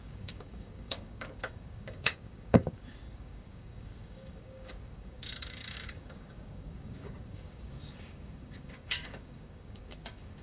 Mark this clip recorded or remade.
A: remade